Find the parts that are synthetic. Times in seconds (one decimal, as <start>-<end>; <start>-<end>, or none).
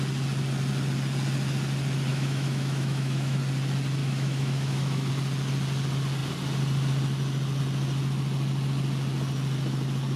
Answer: 2.1-3.4; 4.0-5.1